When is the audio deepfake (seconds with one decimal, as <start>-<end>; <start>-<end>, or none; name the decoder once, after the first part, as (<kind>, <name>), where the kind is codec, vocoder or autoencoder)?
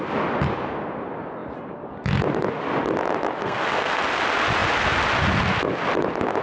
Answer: 3.4-4.0 (codec, SNAC)